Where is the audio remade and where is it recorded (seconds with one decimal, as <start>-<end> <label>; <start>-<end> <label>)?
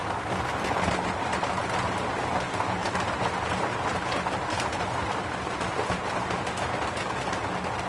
0.0-2.8 recorded; 2.8-6.4 remade; 6.4-7.9 recorded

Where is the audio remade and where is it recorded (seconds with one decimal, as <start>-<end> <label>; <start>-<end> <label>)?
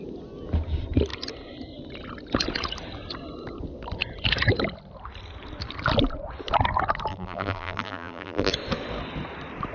0.0-7.1 recorded; 7.1-8.5 remade; 8.5-9.7 recorded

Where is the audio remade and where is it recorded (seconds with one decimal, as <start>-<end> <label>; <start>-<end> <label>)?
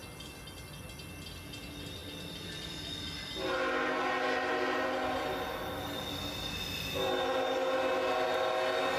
0.0-9.0 recorded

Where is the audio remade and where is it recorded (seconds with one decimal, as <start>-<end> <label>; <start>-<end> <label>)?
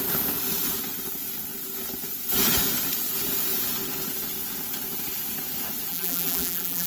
0.0-5.9 recorded; 5.9-6.9 remade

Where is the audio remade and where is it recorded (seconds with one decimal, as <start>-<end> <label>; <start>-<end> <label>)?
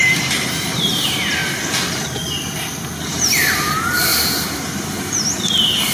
0.0-1.4 remade; 1.4-3.3 recorded; 3.3-5.9 remade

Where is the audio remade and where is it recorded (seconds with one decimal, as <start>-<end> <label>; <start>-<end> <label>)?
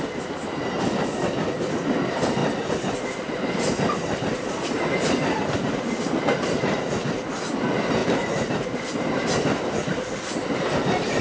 0.0-8.0 recorded; 8.0-8.8 remade; 8.8-11.2 recorded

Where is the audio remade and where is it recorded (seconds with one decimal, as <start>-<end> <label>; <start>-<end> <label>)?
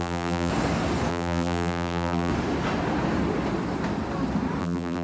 0.0-0.5 remade; 0.5-1.1 recorded; 1.1-2.3 remade; 2.3-4.6 recorded; 4.6-5.0 remade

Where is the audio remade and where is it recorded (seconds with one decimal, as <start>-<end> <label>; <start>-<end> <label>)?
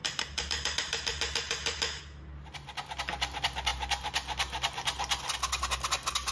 0.0-2.0 remade; 2.0-6.3 recorded